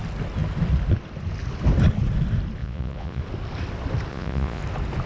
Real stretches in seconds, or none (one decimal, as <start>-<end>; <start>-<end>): 0.0-2.6; 3.2-4.1; 4.6-5.1